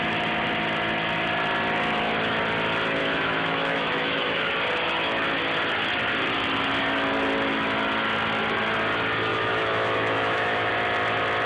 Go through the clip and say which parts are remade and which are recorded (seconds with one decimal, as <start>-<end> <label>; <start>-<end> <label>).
0.0-3.0 recorded; 3.0-4.5 remade; 4.5-9.3 recorded; 9.3-10.7 remade; 10.7-11.5 recorded